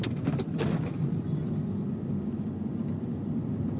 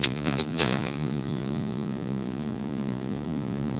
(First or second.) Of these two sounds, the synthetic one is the second